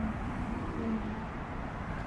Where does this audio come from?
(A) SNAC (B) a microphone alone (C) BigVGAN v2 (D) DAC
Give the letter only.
C